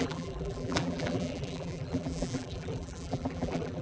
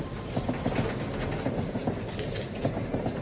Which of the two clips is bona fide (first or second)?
second